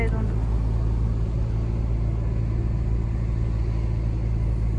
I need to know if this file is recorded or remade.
recorded